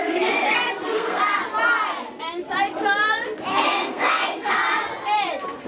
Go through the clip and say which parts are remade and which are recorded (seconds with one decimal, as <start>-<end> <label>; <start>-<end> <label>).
0.0-1.2 remade; 1.2-3.5 recorded; 3.5-4.6 remade; 4.6-5.7 recorded